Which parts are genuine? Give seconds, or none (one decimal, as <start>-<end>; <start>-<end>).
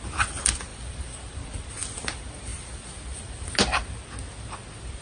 0.0-0.7; 1.7-5.0